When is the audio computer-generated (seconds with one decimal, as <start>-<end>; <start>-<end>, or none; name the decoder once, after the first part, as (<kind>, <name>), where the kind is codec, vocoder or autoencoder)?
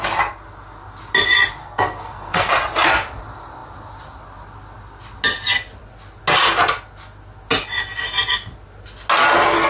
1.6-2.5 (codec, SNAC)